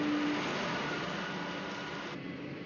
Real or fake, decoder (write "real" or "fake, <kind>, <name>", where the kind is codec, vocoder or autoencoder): real